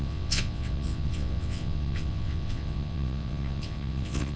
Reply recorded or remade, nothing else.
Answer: remade